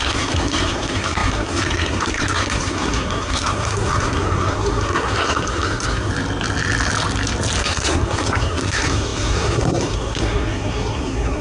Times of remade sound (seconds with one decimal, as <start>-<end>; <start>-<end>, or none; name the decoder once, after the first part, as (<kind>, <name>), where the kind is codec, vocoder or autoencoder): 0.0-6.1 (codec, SNAC); 7.6-11.4